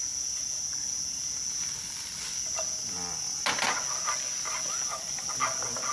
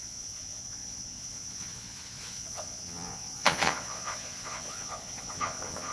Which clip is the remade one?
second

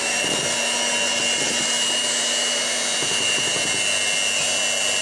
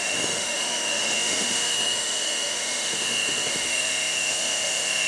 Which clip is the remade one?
second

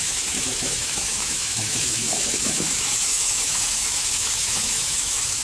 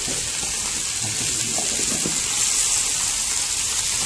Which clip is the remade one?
first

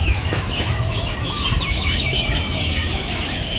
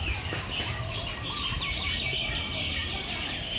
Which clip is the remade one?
first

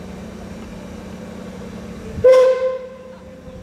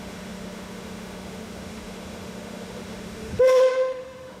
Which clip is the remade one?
second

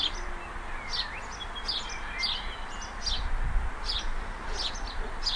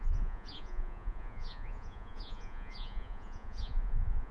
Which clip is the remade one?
second